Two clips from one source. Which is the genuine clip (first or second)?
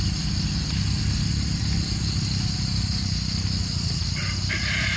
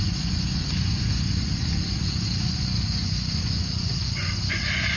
first